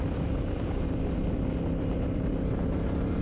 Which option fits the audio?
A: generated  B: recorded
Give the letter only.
B